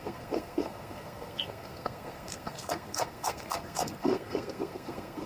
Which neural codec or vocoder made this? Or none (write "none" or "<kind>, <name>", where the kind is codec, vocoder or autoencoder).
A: codec, SNAC